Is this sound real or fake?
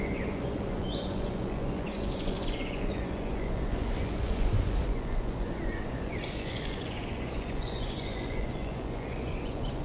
fake